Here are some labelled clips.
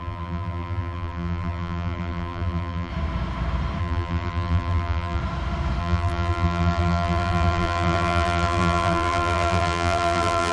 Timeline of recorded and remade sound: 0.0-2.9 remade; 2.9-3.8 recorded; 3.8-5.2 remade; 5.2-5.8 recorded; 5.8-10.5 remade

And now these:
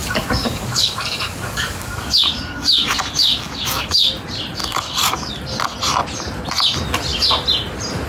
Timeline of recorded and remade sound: 0.0-4.1 remade; 4.1-4.6 recorded; 4.6-5.3 remade; 5.3-8.1 recorded

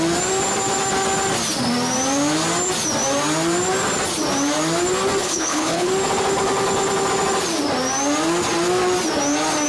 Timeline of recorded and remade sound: 0.0-5.2 recorded; 5.2-5.9 remade; 5.9-9.7 recorded

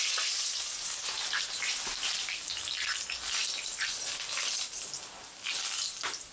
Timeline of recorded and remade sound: 0.0-6.3 recorded

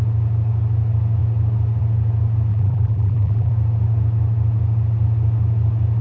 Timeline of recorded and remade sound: 0.0-2.5 recorded; 2.5-3.5 remade; 3.5-6.0 recorded

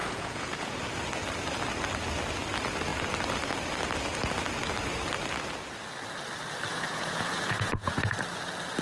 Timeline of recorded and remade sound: 0.0-0.8 remade; 0.8-6.7 recorded; 6.7-8.0 remade; 8.0-8.8 recorded

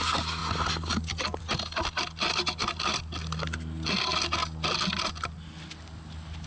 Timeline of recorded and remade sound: 0.0-6.5 recorded